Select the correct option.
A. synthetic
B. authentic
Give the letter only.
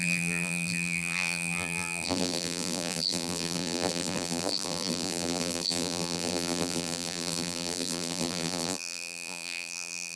A